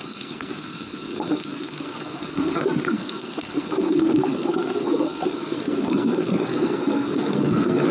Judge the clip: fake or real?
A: fake